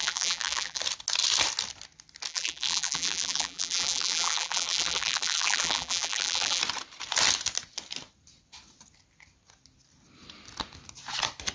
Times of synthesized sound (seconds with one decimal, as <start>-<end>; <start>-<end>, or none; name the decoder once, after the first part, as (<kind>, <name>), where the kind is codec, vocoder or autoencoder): 0.0-0.8 (vocoder, BigVGAN v2); 2.3-6.6